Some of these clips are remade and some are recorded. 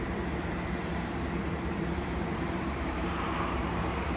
remade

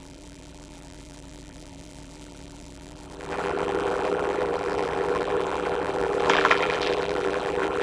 remade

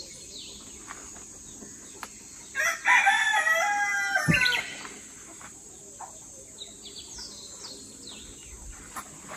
recorded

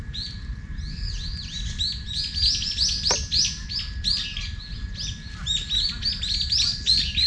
recorded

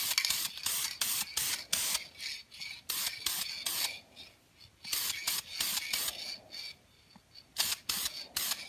recorded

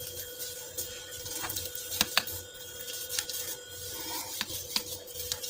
recorded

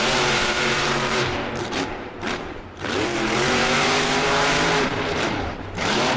remade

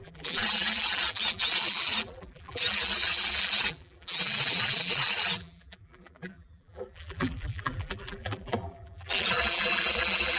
remade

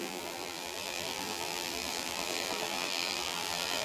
remade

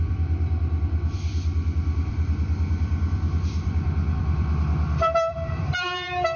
remade